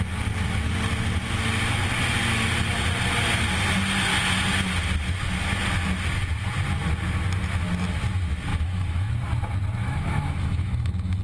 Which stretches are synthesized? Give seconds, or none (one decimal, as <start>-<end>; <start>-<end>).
8.5-9.1; 9.8-11.2